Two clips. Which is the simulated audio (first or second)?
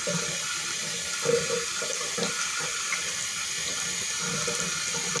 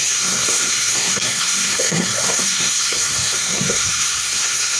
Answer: second